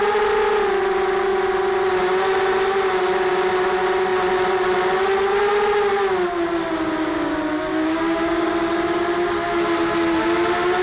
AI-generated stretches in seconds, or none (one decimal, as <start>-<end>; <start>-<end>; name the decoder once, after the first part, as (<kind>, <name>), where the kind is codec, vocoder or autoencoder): 7.7-8.5 (codec, DAC)